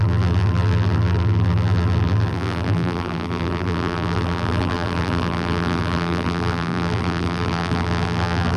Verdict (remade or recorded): remade